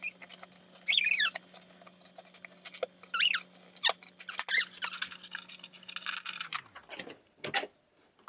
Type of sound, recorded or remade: recorded